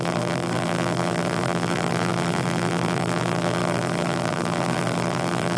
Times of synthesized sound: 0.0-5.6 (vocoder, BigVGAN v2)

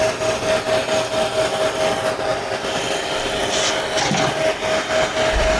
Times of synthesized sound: 0.0-0.8 (vocoder, BigVGAN v2); 1.6-3.4; 4.3-5.6

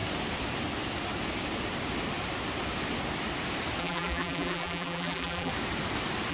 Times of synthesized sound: 3.8-5.5 (vocoder, BigVGAN v2)

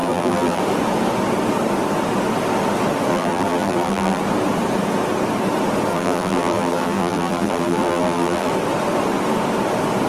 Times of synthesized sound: 0.0-0.6 (vocoder, BigVGAN v2); 3.1-4.2; 5.9-8.5

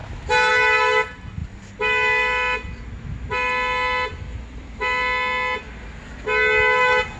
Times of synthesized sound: none

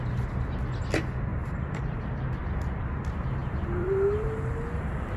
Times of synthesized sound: 1.3-2.4 (vocoder, BigVGAN v2); 3.4-4.5